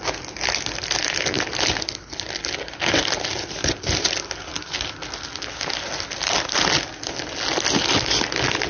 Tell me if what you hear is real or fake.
real